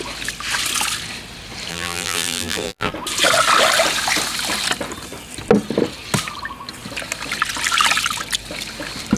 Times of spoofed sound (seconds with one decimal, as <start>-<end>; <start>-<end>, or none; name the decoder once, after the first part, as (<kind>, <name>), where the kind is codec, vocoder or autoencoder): 1.7-2.9 (vocoder, BigVGAN v2)